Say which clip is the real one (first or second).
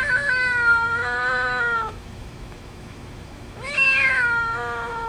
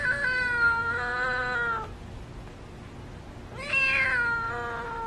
second